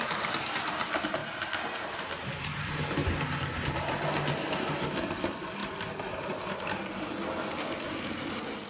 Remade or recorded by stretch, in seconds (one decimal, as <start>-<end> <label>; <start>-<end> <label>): 0.0-8.7 recorded